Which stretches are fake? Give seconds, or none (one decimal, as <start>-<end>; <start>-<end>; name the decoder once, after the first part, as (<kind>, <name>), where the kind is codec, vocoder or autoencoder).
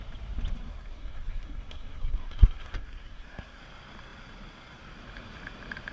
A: 0.6-3.6 (codec, SNAC)